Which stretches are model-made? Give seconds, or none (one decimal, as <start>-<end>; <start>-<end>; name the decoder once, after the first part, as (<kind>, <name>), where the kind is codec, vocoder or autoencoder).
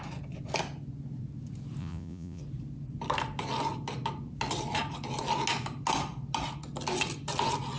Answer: 1.8-2.4 (vocoder, Vocos)